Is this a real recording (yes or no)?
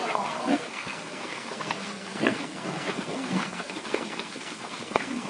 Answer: no